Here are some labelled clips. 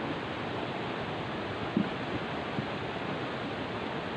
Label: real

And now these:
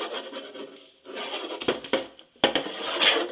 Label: real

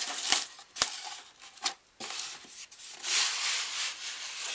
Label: real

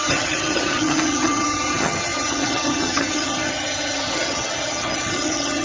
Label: fake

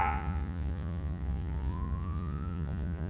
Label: fake